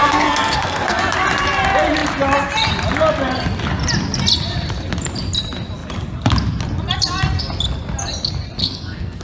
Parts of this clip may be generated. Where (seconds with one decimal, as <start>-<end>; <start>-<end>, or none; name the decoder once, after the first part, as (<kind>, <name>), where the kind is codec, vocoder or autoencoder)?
0.0-1.0 (codec, SNAC); 8.6-9.2